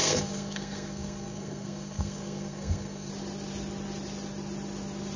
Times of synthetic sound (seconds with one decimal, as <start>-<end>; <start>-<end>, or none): 0.0-3.1